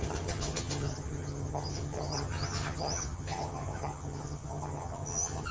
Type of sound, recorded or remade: remade